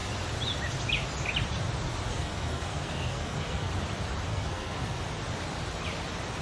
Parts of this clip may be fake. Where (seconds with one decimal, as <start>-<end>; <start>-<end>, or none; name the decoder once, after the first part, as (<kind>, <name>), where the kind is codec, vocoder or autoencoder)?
2.1-3.7 (codec, SNAC); 4.3-5.0